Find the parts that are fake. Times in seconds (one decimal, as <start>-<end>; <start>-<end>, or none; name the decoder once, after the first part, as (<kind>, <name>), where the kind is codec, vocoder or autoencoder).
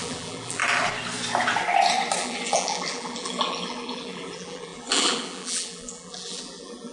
0.0-0.6 (vocoder, BigVGAN v2); 2.2-6.9